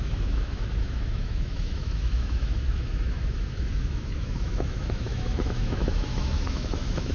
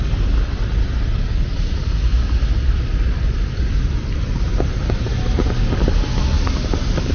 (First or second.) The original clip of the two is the second